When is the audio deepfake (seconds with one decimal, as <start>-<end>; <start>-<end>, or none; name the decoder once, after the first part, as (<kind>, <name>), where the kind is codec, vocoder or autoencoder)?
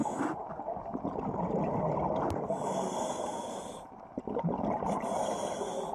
none